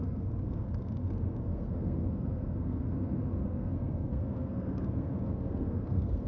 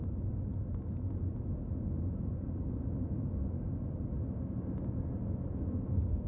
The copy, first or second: first